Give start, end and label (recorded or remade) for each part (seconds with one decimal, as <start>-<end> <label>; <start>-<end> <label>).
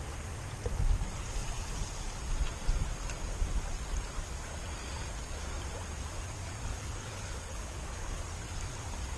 0.0-6.7 recorded; 6.7-8.2 remade; 8.2-9.2 recorded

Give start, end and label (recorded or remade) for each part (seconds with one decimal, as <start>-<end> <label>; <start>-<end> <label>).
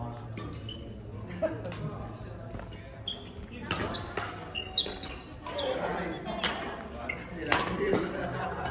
0.0-8.7 recorded